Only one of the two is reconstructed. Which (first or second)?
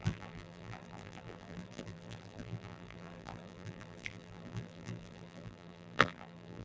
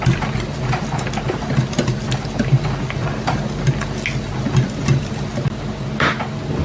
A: first